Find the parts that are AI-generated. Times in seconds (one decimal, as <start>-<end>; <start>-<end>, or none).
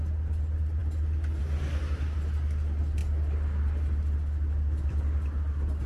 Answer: none